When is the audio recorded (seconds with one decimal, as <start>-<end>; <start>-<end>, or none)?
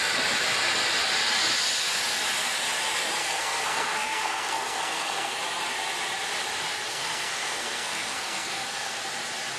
0.0-3.2; 5.4-6.9; 9.0-9.6